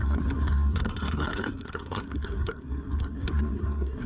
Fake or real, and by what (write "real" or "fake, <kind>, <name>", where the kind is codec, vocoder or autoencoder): fake, codec, SNAC